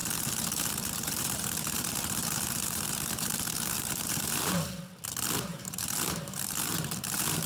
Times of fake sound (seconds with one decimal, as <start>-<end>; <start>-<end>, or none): 0.0-4.5; 5.5-7.5